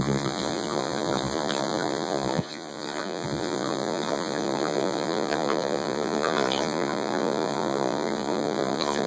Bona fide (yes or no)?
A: no